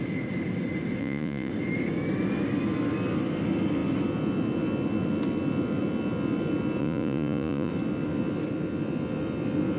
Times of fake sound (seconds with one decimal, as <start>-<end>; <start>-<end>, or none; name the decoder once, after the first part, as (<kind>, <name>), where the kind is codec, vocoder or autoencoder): 1.0-1.5 (vocoder, Vocos); 6.8-7.7